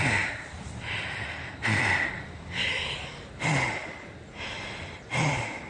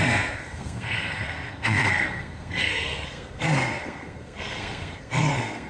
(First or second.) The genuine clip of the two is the first